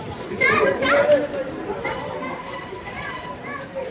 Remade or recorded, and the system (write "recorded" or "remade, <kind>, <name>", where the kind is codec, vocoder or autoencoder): remade, vocoder, BigVGAN v2